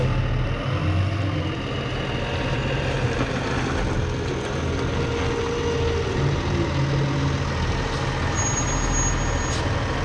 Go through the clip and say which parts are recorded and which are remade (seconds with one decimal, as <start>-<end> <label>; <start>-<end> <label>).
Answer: 0.0-10.0 recorded